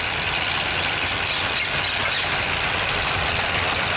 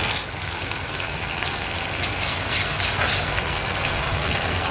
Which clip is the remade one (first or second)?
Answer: second